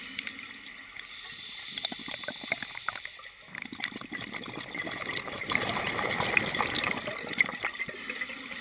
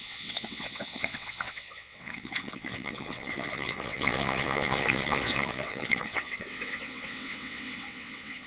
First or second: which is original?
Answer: first